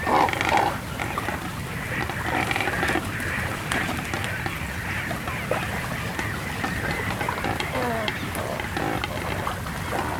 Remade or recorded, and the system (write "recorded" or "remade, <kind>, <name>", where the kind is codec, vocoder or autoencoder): recorded